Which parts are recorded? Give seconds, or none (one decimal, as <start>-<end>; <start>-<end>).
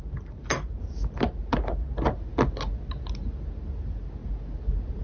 0.0-5.0